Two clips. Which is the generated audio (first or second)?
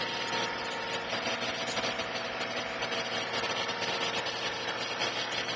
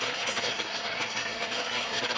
second